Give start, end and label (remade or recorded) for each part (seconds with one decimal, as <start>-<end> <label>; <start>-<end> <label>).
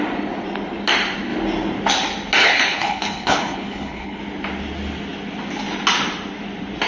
0.0-2.4 recorded; 2.4-4.2 remade; 4.2-6.9 recorded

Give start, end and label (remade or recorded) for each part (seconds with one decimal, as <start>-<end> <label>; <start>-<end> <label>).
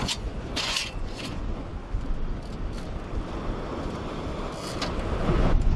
0.0-1.7 remade; 1.7-5.2 recorded; 5.2-5.8 remade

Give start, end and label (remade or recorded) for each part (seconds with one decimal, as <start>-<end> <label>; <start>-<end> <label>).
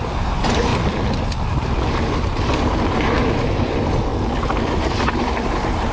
0.0-0.7 remade; 0.7-1.9 recorded; 1.9-4.1 remade; 4.1-4.7 recorded; 4.7-5.9 remade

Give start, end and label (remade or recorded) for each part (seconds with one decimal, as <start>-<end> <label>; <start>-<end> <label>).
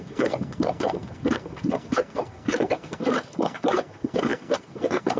0.0-5.2 remade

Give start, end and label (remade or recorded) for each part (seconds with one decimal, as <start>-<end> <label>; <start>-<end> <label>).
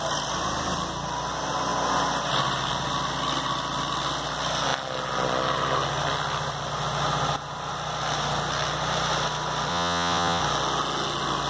0.0-9.7 recorded; 9.7-10.4 remade; 10.4-11.5 recorded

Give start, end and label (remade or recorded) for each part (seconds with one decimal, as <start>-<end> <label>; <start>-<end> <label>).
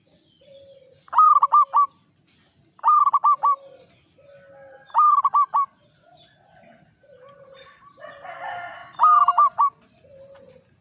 0.0-10.8 recorded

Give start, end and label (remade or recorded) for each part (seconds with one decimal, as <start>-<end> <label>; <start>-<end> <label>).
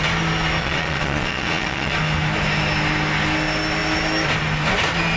0.0-0.6 recorded; 0.6-2.0 remade; 2.0-5.2 recorded